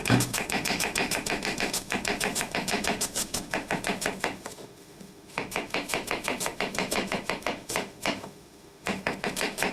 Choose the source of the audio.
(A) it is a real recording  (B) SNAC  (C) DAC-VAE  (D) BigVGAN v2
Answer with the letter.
C